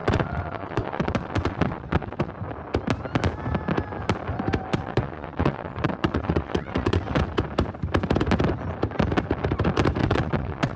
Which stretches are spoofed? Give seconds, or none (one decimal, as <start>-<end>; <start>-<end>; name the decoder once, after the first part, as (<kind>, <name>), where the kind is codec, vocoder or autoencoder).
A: 0.0-2.3 (vocoder, WaveNeXt); 4.7-7.2; 10.0-10.8